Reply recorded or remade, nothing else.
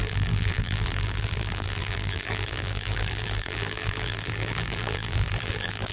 remade